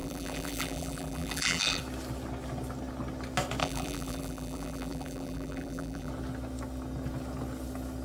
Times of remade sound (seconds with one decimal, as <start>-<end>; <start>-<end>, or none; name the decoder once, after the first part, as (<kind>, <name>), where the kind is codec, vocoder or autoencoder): 0.0-1.8 (vocoder, BigVGAN v2); 3.6-6.1